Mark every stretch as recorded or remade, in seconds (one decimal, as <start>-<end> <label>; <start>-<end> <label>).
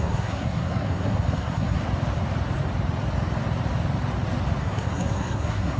0.0-1.8 remade; 1.8-4.6 recorded; 4.6-5.8 remade